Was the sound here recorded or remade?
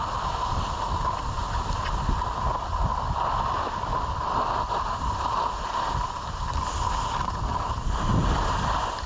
recorded